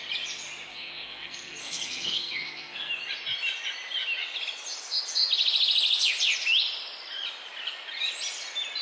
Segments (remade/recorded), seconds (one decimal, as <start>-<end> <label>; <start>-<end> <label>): 0.0-0.7 recorded; 0.7-2.9 remade; 2.9-8.8 recorded